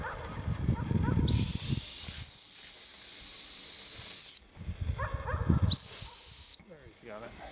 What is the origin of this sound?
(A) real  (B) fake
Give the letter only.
A